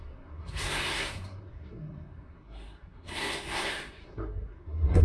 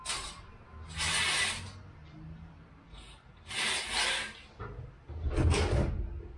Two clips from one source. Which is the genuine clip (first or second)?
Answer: second